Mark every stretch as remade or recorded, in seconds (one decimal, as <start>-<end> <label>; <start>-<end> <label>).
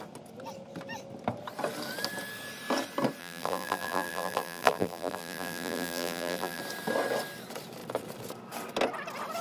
0.0-3.2 recorded; 3.2-6.6 remade; 6.6-9.4 recorded